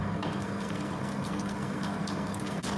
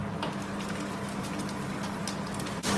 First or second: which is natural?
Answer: second